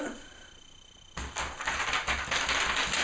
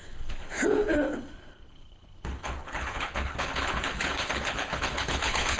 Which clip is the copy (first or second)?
second